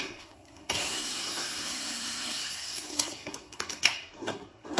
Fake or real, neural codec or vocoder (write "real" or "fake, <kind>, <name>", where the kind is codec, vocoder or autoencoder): fake, codec, SNAC